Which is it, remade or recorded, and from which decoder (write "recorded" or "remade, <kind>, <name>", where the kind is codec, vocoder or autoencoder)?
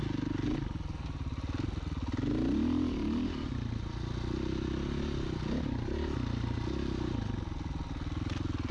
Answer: recorded